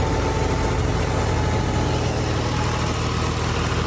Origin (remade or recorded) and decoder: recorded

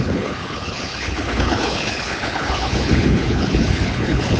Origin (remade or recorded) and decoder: remade, codec, HILCodec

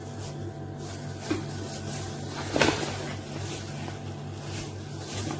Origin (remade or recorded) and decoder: recorded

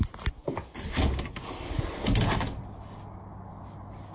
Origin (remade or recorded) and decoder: recorded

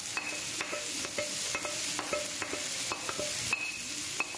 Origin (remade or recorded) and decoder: recorded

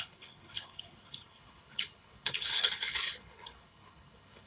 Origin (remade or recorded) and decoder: remade, codec, HILCodec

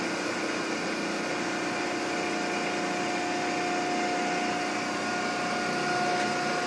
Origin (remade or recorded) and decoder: recorded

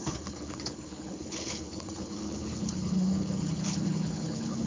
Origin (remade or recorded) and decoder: remade, codec, HILCodec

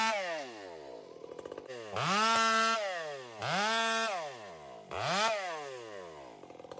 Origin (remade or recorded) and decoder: recorded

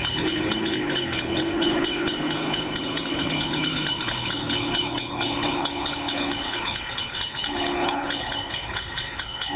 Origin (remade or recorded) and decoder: remade, codec, HILCodec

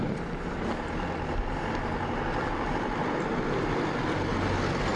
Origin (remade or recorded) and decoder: recorded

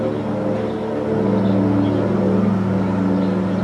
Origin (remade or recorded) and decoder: recorded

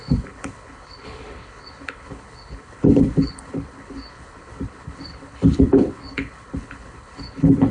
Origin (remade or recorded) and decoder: remade, codec, HILCodec